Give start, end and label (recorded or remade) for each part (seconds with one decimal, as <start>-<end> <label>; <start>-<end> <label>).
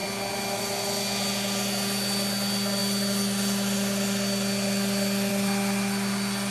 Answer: 0.0-6.5 recorded